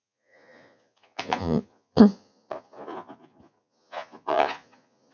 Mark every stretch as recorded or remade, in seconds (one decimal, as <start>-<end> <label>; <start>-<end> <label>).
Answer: 0.0-5.1 remade